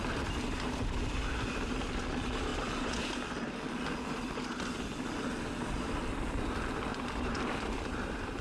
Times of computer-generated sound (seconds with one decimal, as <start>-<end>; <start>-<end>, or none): 6.9-8.4